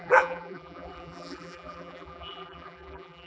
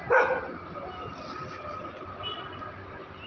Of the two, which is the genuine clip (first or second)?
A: second